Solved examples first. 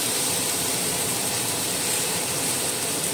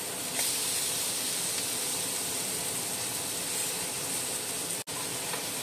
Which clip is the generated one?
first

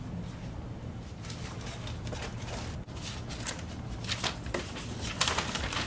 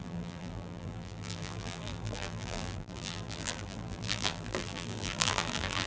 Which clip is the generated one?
second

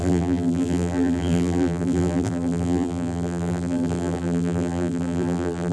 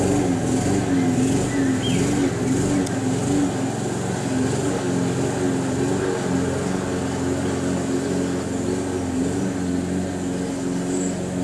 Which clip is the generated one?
first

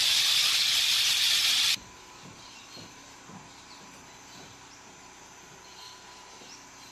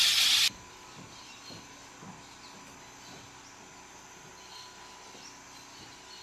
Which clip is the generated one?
first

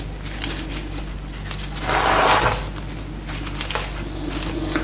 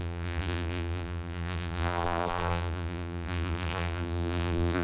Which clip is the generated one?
second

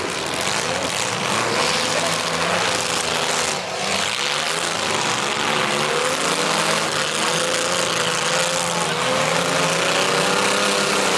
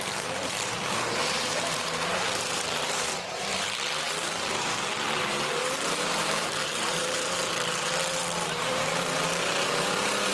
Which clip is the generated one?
second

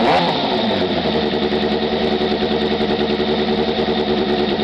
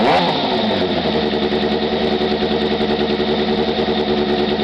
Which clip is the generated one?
first